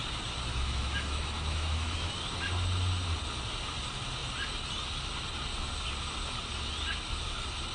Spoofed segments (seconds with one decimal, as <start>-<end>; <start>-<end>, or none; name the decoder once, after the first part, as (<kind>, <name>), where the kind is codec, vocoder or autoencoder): 0.5-2.1 (autoencoder, DAC-VAE)